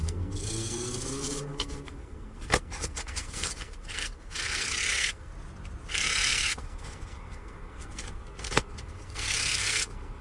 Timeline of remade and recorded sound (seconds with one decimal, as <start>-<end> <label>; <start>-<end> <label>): 0.0-5.3 remade; 5.3-5.9 recorded; 5.9-10.2 remade